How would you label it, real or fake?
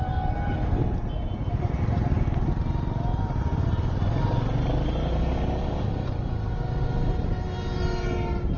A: real